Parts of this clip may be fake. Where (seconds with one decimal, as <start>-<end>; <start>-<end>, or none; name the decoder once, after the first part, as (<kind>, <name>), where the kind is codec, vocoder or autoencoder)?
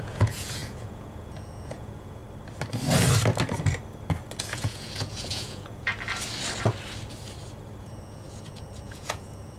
0.0-2.2 (vocoder, Vocos); 4.4-5.9; 7.8-9.6